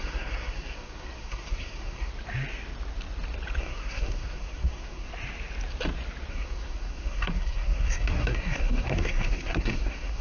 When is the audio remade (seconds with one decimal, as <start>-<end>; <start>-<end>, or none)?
0.0-2.1; 3.6-5.1; 6.3-10.2